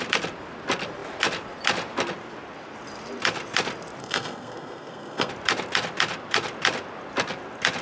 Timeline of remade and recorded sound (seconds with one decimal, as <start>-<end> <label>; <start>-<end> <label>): 0.0-4.0 recorded; 4.0-5.3 remade; 5.3-7.8 recorded